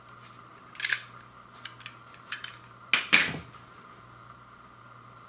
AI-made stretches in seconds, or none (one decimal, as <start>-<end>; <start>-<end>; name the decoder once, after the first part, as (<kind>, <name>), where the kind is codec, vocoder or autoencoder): none